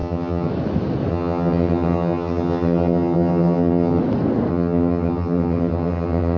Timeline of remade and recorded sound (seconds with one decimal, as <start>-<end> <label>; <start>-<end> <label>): 0.0-0.5 remade; 0.5-1.1 recorded; 1.1-4.0 remade; 4.0-4.5 recorded; 4.5-6.4 remade